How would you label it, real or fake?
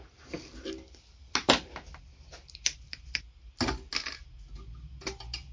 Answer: real